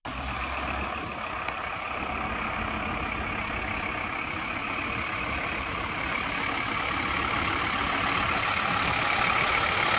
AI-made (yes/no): no